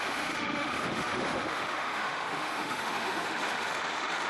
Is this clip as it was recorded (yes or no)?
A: no